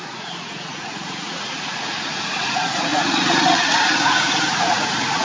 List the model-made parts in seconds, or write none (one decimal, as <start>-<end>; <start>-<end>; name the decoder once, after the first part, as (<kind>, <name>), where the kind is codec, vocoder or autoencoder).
0.0-5.2 (vocoder, Vocos)